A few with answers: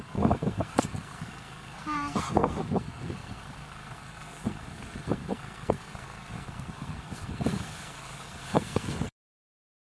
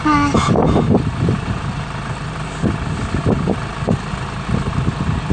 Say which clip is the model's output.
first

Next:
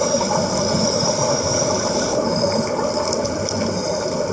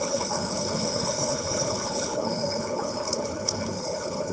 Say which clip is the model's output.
second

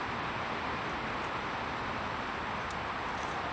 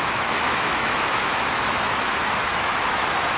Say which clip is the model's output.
second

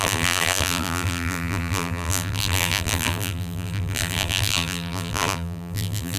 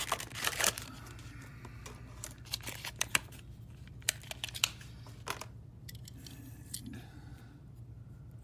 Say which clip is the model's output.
first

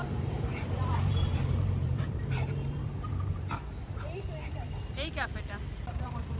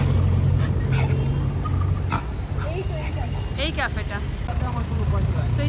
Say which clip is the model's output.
first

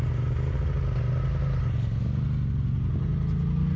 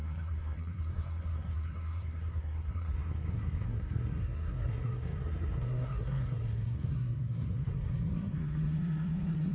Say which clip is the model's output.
second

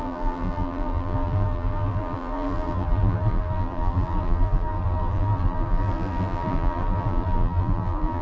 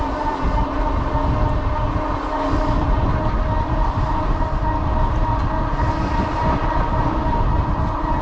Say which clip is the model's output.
first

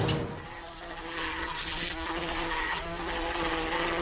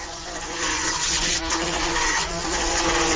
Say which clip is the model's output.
second